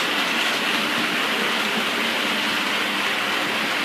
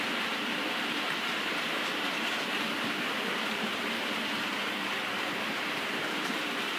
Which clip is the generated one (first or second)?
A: second